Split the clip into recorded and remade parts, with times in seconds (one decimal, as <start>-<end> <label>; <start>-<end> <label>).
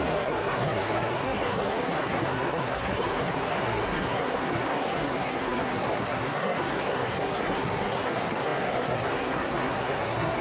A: 0.0-10.4 remade